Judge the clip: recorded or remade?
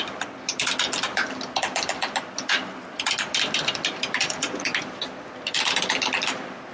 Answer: recorded